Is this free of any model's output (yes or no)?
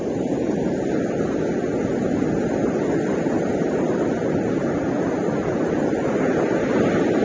yes